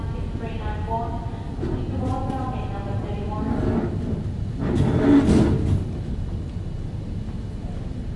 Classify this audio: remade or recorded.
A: recorded